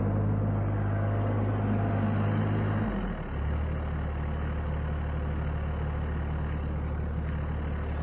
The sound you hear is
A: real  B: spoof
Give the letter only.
A